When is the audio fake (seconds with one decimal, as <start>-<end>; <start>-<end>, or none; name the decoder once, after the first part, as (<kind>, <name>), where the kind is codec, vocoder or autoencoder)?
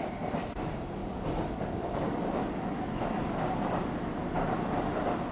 1.0-3.8 (codec, DAC)